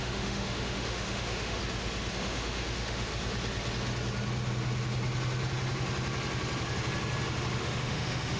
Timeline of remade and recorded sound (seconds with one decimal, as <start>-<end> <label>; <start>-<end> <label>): 0.0-1.6 remade; 1.6-2.1 recorded; 2.1-3.1 remade; 3.1-7.6 recorded; 7.6-8.4 remade